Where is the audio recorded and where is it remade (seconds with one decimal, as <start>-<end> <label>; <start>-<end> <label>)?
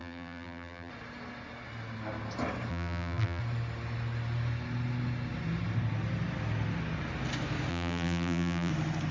0.0-0.9 remade; 0.9-2.7 recorded; 2.7-3.4 remade; 3.4-7.7 recorded; 7.7-8.7 remade; 8.7-9.1 recorded